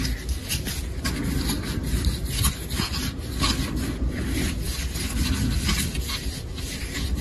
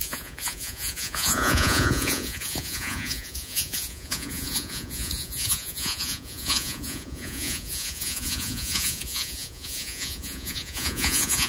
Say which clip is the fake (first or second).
second